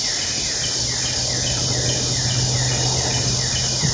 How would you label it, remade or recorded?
recorded